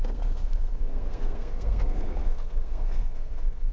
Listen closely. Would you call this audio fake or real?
fake